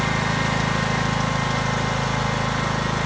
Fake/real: real